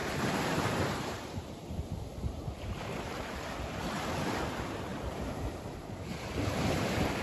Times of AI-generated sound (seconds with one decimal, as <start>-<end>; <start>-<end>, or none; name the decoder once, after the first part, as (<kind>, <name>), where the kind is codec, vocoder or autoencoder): 0.0-2.8 (vocoder, BigVGAN v2); 4.9-7.2